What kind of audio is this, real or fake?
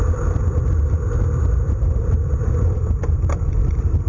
fake